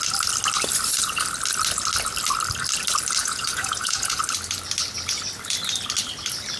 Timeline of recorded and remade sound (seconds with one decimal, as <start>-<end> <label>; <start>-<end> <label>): 0.0-3.2 recorded; 3.2-4.2 remade; 4.2-6.6 recorded